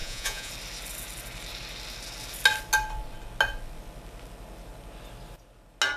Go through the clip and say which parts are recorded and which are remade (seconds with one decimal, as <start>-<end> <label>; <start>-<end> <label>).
0.0-0.5 remade; 0.5-6.0 recorded